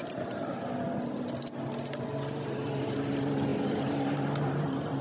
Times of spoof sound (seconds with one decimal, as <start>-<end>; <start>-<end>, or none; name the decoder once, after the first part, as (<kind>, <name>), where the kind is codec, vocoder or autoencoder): none